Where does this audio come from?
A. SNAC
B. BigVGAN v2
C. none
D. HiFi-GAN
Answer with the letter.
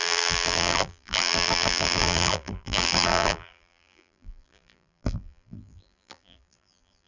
B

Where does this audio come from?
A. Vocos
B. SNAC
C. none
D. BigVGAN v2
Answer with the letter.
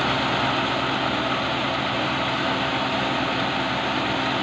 C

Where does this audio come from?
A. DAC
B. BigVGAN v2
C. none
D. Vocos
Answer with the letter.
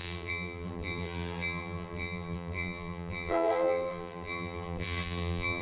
B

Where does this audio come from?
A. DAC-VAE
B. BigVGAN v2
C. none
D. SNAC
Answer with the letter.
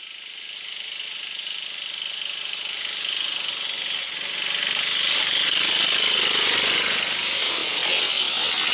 C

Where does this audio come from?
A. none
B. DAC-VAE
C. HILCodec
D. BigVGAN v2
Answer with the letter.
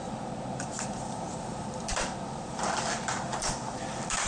D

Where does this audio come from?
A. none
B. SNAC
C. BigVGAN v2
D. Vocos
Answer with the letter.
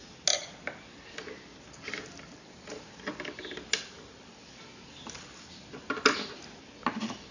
A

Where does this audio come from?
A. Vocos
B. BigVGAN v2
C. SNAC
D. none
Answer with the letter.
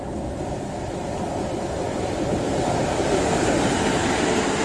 D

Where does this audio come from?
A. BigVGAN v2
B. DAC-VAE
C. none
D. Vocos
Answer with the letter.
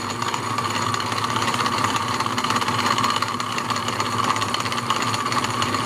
A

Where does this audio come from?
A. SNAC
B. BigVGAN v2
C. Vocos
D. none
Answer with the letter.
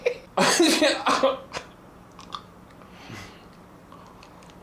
B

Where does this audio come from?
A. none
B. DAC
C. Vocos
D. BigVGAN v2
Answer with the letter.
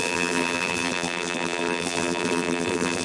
D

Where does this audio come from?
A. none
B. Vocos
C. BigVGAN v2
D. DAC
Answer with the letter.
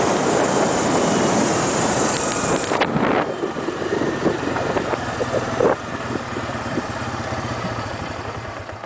C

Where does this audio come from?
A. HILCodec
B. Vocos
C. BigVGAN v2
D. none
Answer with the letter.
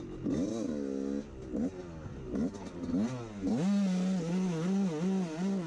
D